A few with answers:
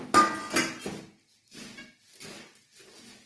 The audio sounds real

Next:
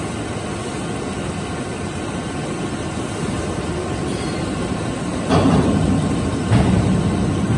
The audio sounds real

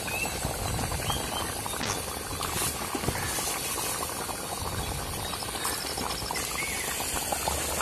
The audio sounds real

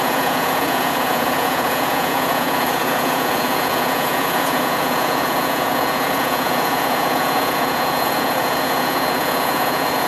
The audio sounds fake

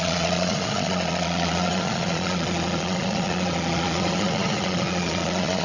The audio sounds fake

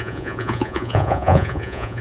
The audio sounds fake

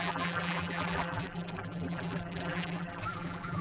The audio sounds fake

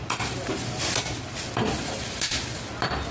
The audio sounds fake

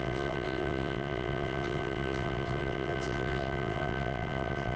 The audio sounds fake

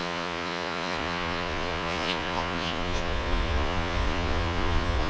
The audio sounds fake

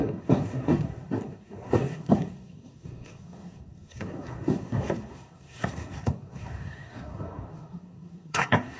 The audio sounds fake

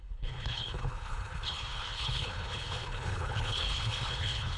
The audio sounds fake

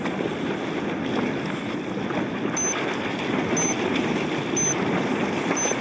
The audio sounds real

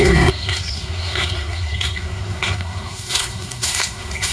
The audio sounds fake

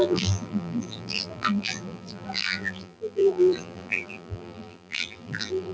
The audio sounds fake